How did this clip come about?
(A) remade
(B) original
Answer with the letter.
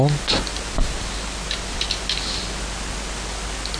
B